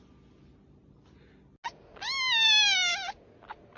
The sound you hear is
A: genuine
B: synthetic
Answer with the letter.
A